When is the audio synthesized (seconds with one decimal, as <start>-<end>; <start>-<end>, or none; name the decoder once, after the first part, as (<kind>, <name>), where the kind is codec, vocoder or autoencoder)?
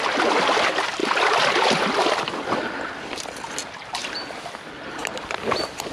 1.0-1.7 (vocoder, BigVGAN v2)